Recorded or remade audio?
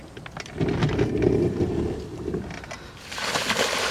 recorded